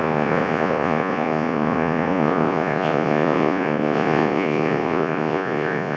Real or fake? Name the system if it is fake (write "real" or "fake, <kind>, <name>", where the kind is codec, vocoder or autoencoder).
fake, vocoder, Vocos